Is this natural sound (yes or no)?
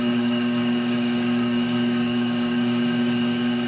no